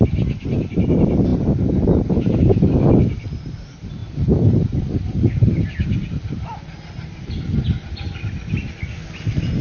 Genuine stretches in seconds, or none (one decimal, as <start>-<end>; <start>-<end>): 0.0-4.0; 8.2-9.6